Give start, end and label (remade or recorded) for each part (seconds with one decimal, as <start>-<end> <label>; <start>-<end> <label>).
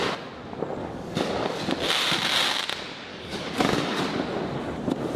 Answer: 0.0-0.8 recorded; 0.8-1.6 remade; 1.6-3.1 recorded; 3.1-4.0 remade; 4.0-5.2 recorded